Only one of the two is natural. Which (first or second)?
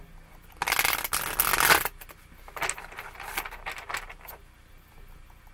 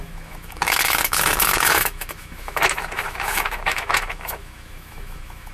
first